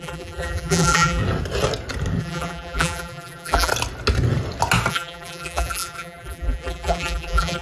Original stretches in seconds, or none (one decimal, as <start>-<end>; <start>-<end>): 1.2-2.2; 3.7-4.9